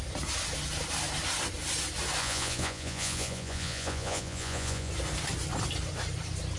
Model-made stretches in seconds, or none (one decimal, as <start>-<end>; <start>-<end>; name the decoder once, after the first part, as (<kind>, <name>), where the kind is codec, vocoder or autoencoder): 2.2-4.9 (vocoder, Vocos)